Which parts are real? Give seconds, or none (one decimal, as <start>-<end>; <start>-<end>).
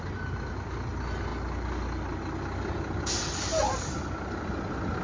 0.0-5.0